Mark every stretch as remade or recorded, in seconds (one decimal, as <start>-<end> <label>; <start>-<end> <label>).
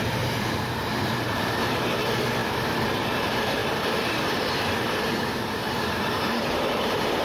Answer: 0.0-3.6 remade; 3.6-4.3 recorded; 4.3-7.2 remade